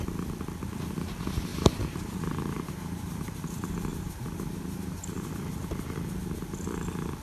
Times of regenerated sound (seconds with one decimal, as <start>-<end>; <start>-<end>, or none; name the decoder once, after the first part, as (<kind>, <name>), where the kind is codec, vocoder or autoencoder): 1.5-3.2 (vocoder, BigVGAN v2); 3.9-5.3